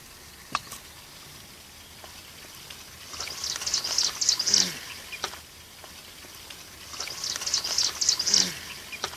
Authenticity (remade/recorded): recorded